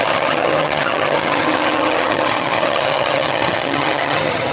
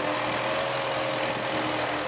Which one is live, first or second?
second